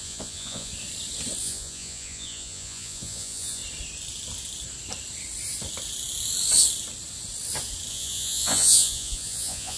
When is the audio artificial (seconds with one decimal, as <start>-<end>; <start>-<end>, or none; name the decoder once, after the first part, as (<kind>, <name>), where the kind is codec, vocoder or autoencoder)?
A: 0.0-0.7 (vocoder, Vocos); 1.4-3.6; 7.9-9.8